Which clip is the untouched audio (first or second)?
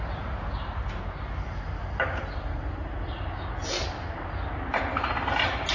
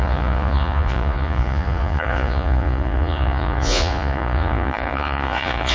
first